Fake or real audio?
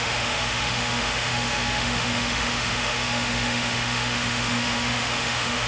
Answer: fake